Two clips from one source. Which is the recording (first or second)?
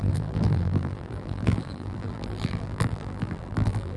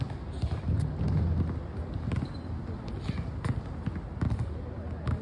second